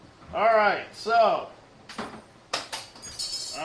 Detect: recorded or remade recorded